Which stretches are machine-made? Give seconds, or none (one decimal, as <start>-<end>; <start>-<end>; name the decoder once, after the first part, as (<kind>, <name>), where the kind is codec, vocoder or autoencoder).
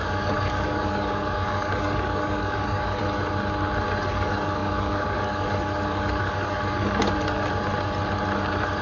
0.0-3.0 (codec, DAC); 4.1-7.0